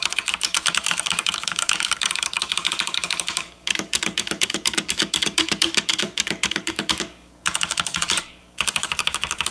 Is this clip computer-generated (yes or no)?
yes